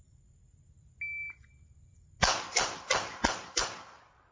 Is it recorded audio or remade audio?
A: recorded